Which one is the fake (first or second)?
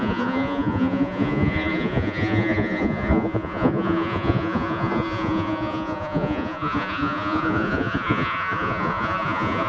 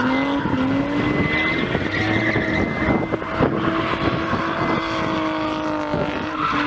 first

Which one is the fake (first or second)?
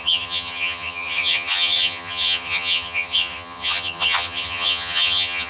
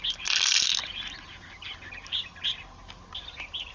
first